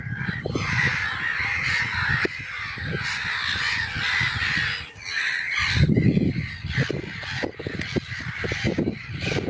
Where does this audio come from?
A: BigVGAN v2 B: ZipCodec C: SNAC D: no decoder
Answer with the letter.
D